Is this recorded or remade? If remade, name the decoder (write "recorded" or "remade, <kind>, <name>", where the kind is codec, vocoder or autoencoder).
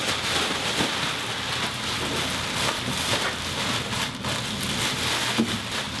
recorded